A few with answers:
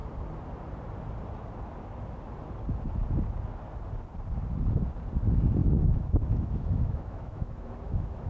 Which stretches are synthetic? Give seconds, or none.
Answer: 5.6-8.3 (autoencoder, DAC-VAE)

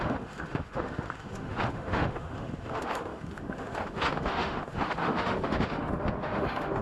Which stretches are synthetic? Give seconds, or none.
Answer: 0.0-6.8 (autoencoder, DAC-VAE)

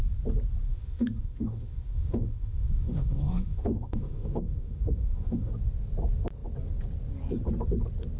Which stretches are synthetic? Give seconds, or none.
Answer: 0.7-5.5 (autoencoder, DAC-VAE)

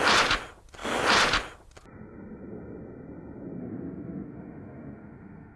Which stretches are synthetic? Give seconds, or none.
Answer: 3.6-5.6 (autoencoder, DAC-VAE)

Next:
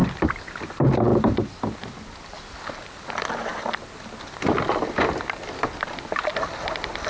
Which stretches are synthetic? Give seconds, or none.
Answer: none

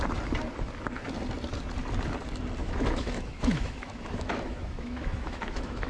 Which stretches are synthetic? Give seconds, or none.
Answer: 2.6-5.9 (autoencoder, DAC-VAE)

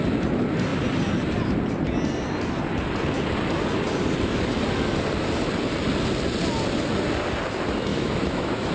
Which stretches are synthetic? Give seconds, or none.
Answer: 7.9-8.7 (autoencoder, DAC-VAE)

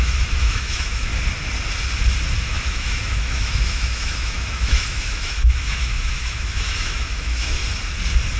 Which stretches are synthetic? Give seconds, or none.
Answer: 0.0-1.1 (autoencoder, DAC-VAE); 2.4-7.6